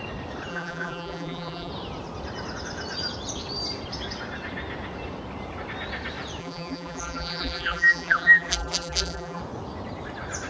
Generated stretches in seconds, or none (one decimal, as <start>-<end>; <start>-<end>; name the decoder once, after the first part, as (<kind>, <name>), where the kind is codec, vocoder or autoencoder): 0.5-1.7 (vocoder, BigVGAN v2); 6.4-9.4